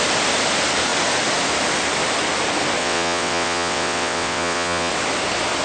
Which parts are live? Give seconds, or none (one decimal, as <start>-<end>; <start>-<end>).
0.0-2.8; 4.9-5.6